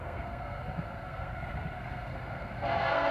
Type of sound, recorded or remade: remade